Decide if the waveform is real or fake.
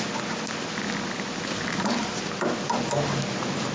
real